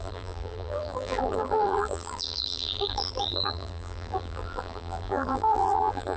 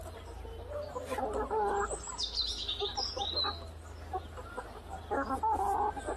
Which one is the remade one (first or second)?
first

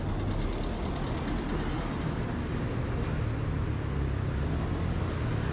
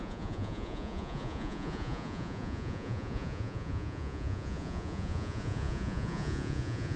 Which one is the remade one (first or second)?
second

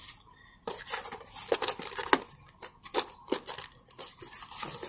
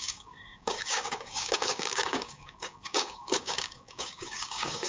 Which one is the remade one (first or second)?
second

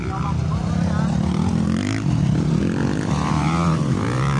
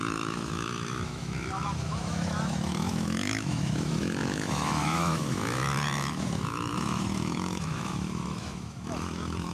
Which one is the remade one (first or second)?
second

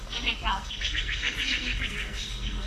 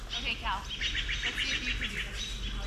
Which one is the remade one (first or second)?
first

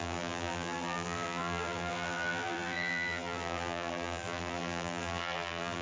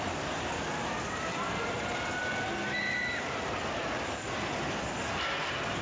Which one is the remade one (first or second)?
first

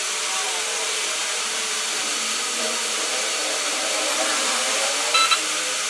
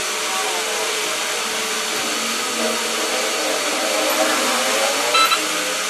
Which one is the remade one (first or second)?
first